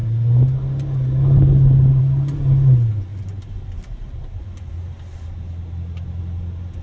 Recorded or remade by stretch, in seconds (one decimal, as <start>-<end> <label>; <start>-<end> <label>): 0.0-3.1 recorded; 3.1-4.6 remade; 4.6-6.8 recorded